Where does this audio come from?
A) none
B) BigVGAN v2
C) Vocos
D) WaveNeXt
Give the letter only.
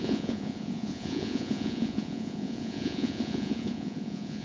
C